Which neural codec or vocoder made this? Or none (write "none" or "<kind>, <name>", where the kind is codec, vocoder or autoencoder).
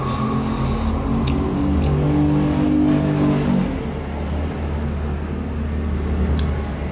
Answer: none